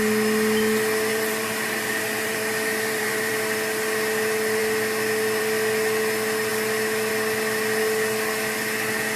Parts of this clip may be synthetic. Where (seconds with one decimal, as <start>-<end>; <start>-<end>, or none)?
1.1-3.3